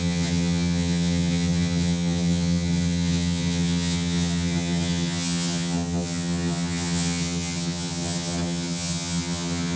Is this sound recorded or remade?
remade